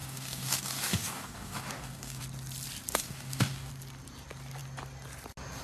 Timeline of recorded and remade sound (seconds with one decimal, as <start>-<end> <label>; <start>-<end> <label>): 0.0-2.2 remade; 2.2-2.9 recorded; 2.9-3.7 remade; 3.7-5.6 recorded